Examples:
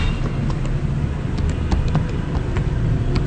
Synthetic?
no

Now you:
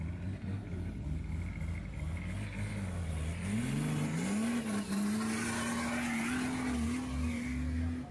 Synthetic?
no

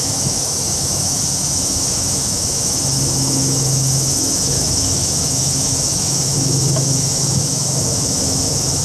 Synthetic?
yes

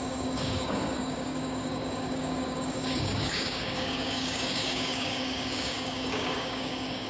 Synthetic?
yes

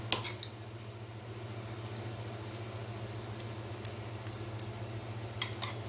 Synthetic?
no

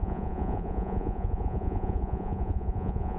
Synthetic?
yes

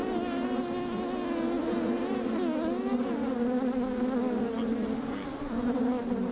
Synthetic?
no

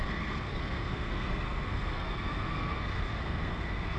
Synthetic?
yes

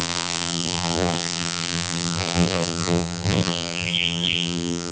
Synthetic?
yes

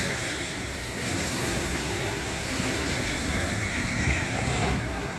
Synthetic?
yes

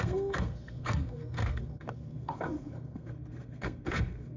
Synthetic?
yes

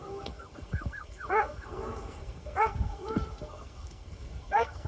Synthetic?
yes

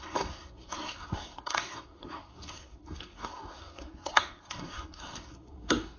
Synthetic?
yes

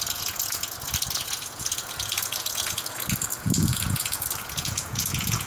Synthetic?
yes